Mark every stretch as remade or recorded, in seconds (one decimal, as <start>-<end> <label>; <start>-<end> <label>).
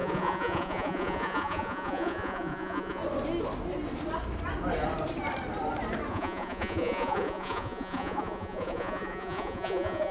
0.0-3.0 remade; 3.0-6.1 recorded; 6.1-10.1 remade